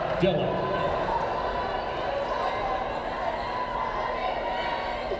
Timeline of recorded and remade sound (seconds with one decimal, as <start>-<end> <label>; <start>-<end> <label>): 0.0-5.2 recorded